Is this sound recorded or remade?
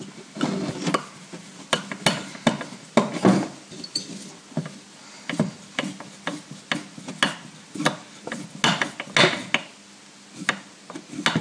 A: recorded